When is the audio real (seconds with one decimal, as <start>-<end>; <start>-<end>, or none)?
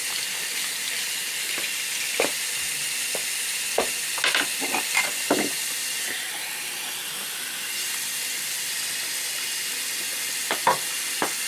0.0-11.5